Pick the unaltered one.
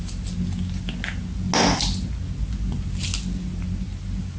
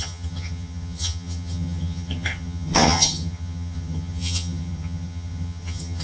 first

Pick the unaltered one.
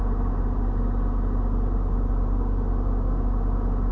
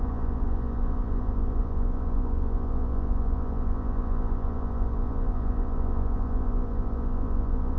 first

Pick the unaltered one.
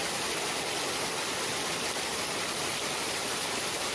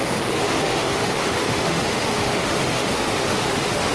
first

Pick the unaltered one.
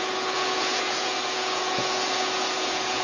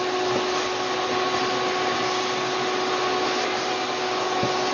second